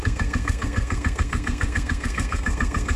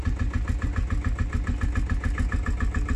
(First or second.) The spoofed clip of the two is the first